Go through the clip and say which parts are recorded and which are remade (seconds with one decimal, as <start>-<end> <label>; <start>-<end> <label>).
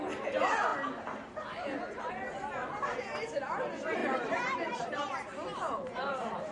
0.0-4.0 recorded; 4.0-6.5 remade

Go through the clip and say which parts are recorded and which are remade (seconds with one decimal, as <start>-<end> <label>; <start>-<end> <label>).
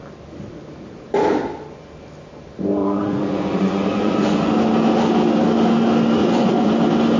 0.0-2.8 recorded; 2.8-4.5 remade; 4.5-6.2 recorded; 6.2-6.7 remade; 6.7-7.2 recorded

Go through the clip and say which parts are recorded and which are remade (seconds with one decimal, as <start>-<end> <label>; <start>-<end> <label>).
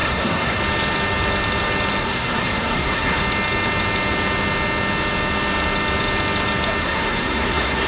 0.0-0.6 remade; 0.6-2.0 recorded; 2.0-3.2 remade; 3.2-6.8 recorded; 6.8-7.9 remade